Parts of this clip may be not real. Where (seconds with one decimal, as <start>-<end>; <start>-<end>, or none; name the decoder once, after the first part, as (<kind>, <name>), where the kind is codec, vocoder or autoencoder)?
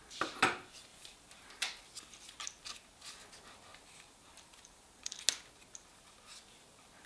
0.9-1.8 (vocoder, BigVGAN v2); 3.7-5.1